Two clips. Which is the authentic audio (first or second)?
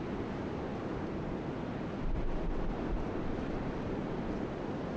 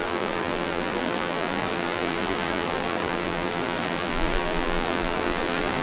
first